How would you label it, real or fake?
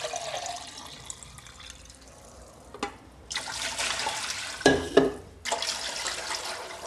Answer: real